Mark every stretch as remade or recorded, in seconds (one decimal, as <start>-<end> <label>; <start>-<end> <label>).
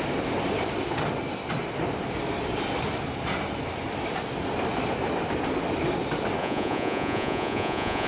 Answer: 0.0-6.4 recorded; 6.4-8.1 remade